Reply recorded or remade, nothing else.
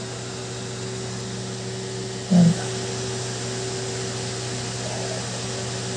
recorded